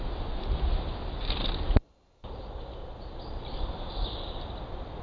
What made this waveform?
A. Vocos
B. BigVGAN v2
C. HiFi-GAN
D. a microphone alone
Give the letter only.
D